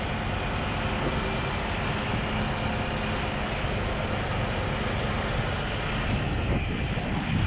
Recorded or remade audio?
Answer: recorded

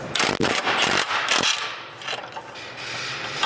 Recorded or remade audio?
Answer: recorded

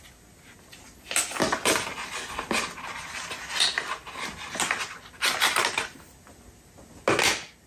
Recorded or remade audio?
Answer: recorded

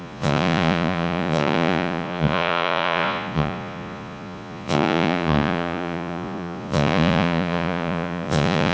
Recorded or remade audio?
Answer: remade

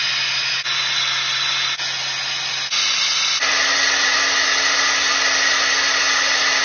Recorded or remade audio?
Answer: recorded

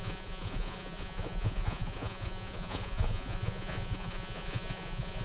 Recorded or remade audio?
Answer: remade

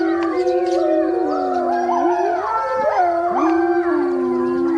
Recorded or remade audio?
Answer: recorded